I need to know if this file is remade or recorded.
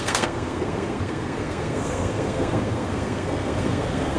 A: remade